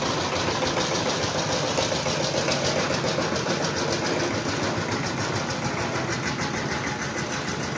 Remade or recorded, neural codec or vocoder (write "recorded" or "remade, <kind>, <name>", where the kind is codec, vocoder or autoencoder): recorded